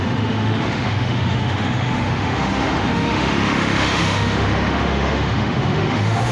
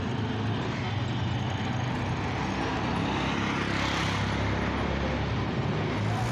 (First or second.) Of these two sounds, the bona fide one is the second